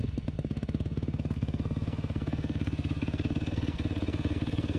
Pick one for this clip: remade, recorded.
remade